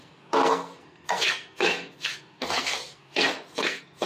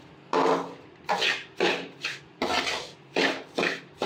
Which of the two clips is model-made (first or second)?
first